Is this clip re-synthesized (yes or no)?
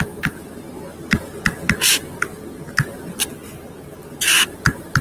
no